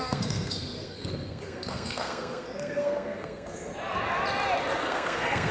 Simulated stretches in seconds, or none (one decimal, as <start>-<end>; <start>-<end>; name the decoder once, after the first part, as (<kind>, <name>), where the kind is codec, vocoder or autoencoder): 0.0-3.7 (codec, SNAC); 4.8-5.5